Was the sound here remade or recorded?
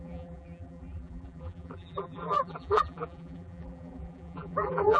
remade